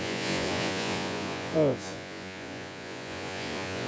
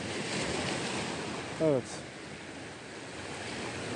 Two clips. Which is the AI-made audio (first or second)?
first